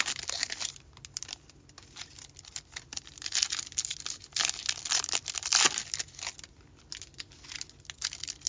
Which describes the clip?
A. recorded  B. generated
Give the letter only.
A